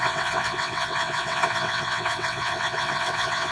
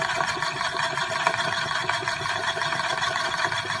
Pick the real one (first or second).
second